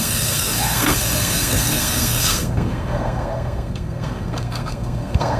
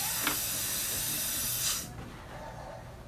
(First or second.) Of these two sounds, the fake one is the first